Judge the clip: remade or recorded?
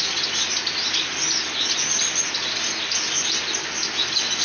recorded